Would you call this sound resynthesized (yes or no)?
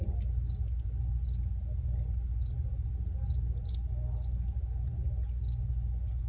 no